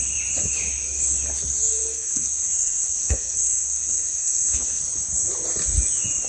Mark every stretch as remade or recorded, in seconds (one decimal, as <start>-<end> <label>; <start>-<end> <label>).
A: 0.0-1.7 recorded; 1.7-4.8 remade; 4.8-6.3 recorded

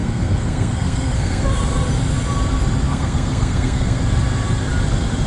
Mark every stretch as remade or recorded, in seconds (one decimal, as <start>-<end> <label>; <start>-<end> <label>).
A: 0.0-1.4 remade; 1.4-2.9 recorded; 2.9-4.0 remade; 4.0-5.3 recorded